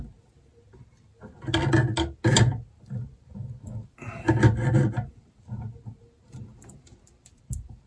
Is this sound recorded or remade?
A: recorded